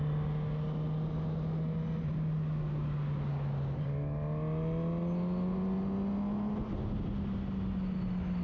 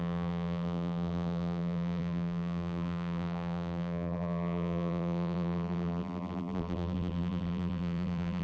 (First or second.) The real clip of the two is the first